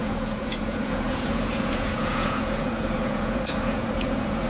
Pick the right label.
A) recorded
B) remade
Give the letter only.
B